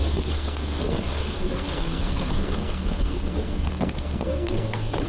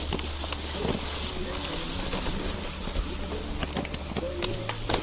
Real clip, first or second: second